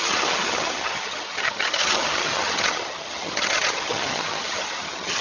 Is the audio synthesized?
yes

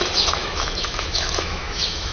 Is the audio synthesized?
yes